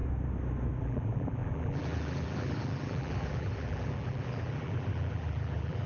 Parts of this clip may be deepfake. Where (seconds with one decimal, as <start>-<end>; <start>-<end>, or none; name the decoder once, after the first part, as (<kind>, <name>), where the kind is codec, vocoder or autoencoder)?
0.8-5.9 (vocoder, BigVGAN v2)